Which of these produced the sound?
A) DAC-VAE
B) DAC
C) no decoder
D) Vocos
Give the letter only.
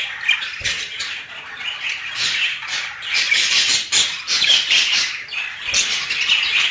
C